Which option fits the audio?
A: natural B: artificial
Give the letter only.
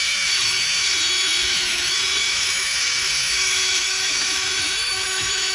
B